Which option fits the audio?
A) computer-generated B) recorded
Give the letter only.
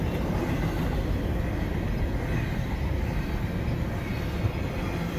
B